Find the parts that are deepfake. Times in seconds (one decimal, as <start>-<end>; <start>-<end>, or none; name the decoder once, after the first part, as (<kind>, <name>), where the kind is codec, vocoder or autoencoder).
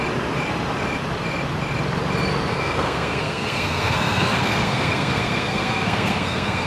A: 2.5-6.7 (codec, SNAC)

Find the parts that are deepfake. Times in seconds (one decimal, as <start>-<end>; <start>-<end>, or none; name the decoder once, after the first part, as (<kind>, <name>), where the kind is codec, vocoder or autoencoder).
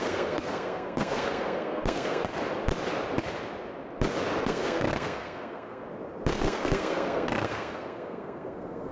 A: 0.0-2.3 (codec, SNAC); 4.4-5.8; 6.3-8.9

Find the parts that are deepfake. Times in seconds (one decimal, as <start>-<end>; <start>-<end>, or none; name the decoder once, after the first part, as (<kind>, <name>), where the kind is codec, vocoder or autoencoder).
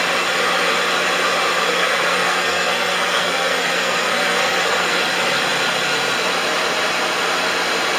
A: 1.7-5.0 (codec, SNAC)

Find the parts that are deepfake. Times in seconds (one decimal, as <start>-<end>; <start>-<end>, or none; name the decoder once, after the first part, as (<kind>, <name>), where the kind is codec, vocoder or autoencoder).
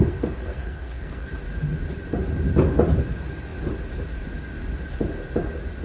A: 0.0-1.3 (codec, SNAC)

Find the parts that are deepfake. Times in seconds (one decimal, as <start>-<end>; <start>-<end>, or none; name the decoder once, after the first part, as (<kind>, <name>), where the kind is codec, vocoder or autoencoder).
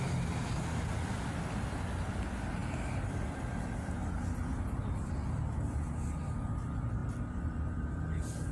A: none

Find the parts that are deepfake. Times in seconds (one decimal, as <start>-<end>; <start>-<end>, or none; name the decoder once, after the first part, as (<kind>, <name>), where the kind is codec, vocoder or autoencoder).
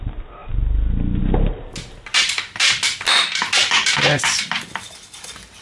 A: none